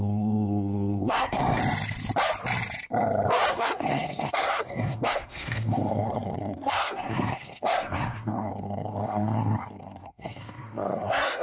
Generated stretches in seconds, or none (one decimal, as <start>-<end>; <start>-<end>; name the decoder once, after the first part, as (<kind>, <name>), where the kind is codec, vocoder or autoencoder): 0.0-1.6 (codec, SNAC); 3.5-11.4